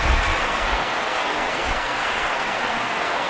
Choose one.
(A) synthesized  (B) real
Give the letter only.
A